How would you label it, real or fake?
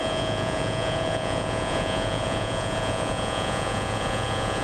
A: fake